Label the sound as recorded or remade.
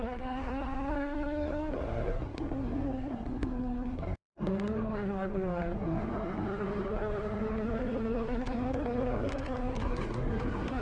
remade